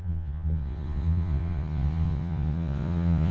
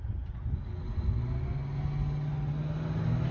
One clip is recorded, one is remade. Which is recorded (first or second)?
second